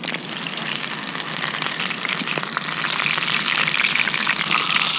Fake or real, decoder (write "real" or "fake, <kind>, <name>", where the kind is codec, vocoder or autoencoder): real